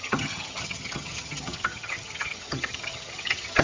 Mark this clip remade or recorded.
remade